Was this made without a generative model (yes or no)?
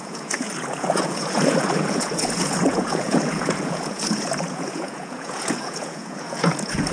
no